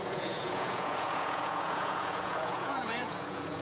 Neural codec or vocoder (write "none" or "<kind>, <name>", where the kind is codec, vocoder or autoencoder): vocoder, Vocos